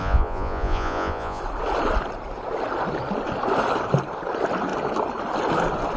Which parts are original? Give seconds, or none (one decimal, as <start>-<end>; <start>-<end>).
1.4-6.0

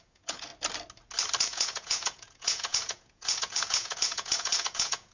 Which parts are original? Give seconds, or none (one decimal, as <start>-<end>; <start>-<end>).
0.5-1.4

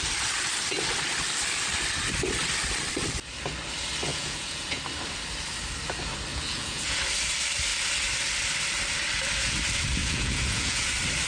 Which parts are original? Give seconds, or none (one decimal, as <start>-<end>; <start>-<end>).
0.0-4.1; 4.8-6.3; 7.0-10.0; 10.9-11.3

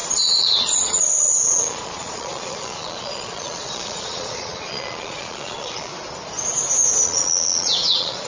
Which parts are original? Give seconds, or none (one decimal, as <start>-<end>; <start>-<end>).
5.9-7.0

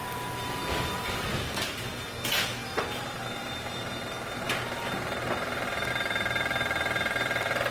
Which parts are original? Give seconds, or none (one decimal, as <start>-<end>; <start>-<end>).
0.0-7.7

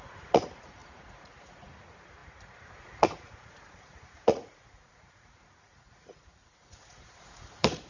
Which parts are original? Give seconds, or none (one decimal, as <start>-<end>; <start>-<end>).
none

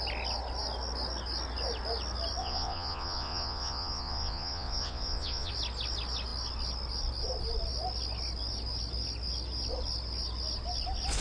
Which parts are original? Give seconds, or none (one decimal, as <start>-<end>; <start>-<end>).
0.0-2.4; 5.5-11.2

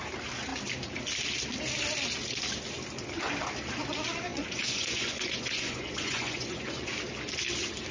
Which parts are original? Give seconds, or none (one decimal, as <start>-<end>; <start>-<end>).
0.0-4.3; 6.9-7.9